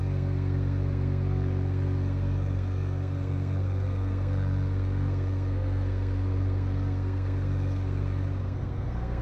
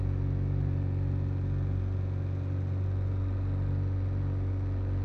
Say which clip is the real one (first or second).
second